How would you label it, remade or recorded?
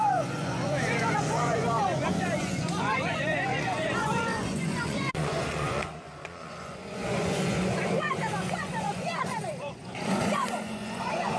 remade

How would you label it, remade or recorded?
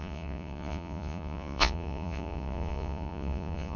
remade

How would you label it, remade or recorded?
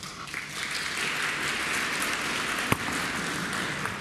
recorded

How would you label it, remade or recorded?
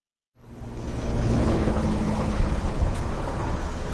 remade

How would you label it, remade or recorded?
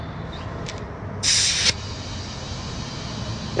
recorded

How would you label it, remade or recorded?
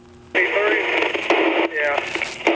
recorded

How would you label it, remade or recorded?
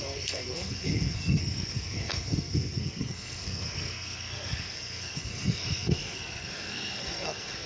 remade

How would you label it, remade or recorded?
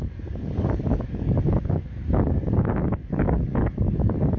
remade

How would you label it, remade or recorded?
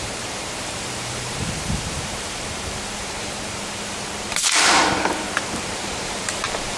remade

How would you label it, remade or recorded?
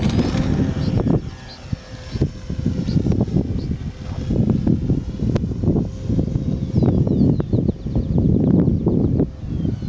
recorded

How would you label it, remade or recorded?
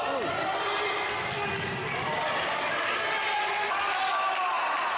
recorded